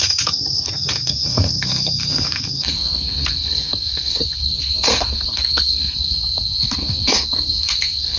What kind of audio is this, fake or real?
fake